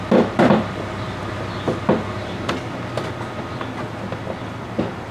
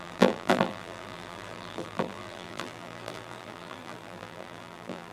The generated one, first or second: second